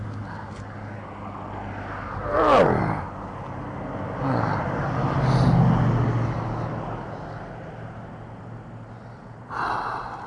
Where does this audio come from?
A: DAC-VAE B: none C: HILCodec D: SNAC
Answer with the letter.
B